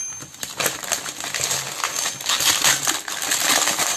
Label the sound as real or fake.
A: fake